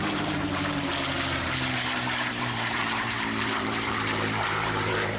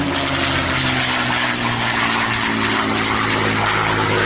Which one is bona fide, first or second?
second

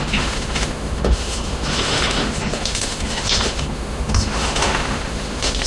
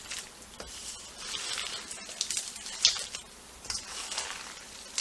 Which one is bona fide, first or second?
second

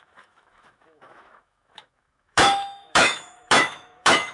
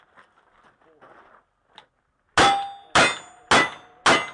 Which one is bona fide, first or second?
second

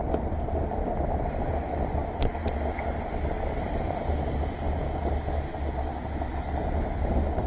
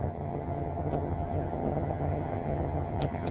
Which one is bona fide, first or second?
first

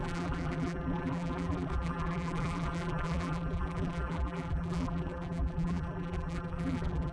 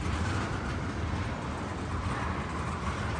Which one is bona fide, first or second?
second